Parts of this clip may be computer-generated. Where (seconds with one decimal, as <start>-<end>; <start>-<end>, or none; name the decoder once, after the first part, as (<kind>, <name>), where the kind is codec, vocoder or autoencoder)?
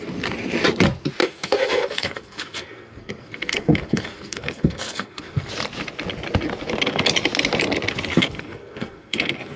1.2-5.5 (codec, SNAC); 8.1-9.6